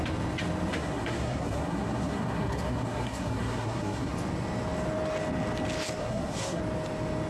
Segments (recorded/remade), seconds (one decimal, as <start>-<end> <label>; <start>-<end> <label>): 0.0-0.7 recorded; 0.7-4.1 remade; 4.1-6.0 recorded; 6.0-6.6 remade; 6.6-7.3 recorded